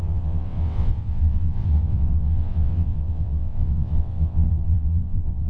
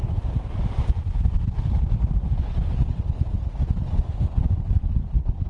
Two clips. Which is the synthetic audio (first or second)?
first